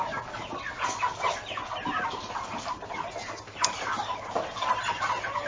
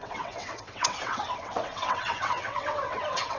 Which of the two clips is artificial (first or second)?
second